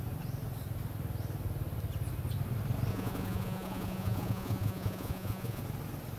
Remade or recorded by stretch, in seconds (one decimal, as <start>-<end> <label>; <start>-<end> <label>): 0.0-2.9 recorded; 2.9-5.6 remade; 5.6-6.2 recorded